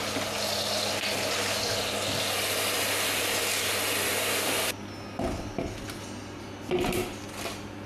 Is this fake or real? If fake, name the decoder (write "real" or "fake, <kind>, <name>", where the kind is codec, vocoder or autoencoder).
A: real